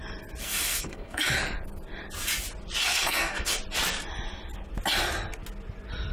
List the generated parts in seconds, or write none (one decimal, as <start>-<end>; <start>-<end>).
0.4-1.2; 2.8-3.6